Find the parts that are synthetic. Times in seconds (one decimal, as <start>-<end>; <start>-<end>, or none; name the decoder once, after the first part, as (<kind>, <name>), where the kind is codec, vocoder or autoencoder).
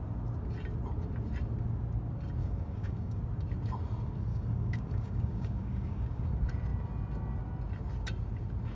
2.4-3.2 (codec, DAC); 4.3-6.2